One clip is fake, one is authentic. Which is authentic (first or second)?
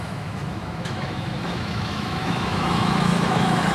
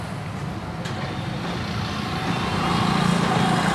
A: second